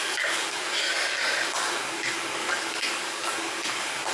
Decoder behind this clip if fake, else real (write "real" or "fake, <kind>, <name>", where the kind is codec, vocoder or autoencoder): fake, codec, DAC